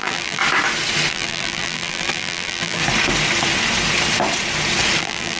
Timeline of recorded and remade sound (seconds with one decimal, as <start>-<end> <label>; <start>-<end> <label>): 0.0-0.4 remade; 0.4-1.1 recorded; 1.1-2.8 remade; 2.8-5.0 recorded; 5.0-5.4 remade